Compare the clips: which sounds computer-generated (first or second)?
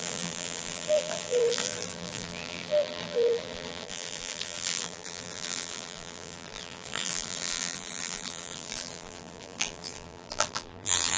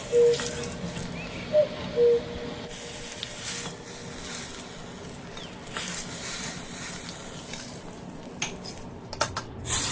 first